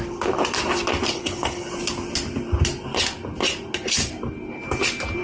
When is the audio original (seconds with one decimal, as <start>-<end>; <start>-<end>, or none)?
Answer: 0.0-1.1; 1.7-5.2